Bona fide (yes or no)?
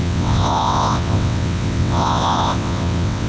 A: no